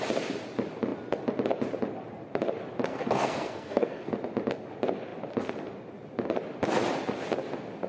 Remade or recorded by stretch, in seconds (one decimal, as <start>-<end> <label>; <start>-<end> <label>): 0.0-2.9 recorded; 2.9-4.1 remade; 4.1-7.9 recorded